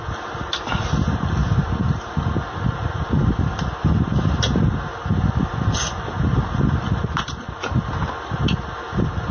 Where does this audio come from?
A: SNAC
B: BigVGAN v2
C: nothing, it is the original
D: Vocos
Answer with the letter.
C